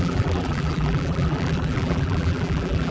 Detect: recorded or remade remade